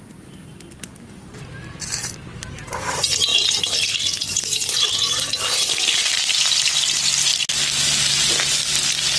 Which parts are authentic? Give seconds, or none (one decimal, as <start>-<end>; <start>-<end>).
0.0-3.3; 4.9-9.2